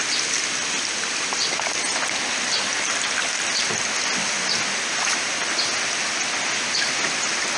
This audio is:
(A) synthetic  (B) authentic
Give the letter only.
B